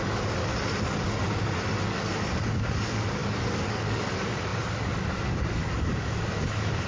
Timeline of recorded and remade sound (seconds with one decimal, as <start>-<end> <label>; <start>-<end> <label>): 0.0-0.5 remade; 0.5-1.8 recorded; 1.8-6.9 remade